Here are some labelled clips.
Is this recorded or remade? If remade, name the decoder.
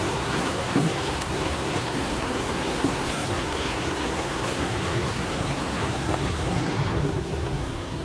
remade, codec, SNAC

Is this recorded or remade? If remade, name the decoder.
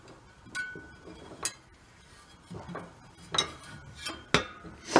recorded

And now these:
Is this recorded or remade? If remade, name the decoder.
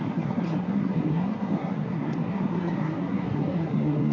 remade, codec, SNAC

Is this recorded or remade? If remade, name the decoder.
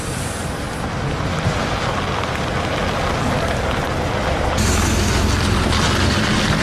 recorded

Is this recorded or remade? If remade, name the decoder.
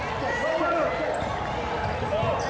recorded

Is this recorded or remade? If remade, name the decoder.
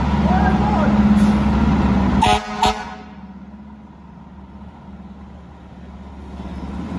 recorded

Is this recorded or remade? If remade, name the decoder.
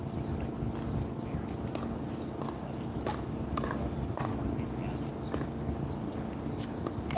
recorded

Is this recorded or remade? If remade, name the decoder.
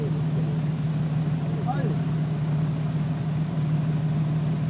recorded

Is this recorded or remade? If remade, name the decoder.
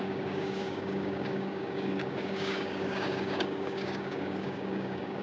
remade, codec, DAC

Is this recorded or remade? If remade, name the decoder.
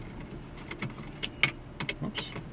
recorded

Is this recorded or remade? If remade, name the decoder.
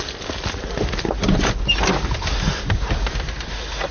recorded